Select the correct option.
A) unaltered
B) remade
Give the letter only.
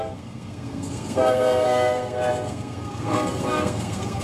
B